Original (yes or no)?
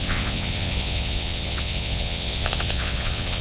no